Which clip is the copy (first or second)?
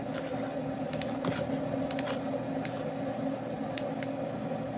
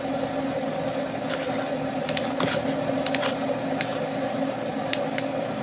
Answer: second